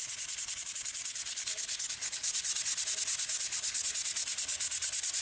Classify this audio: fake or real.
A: real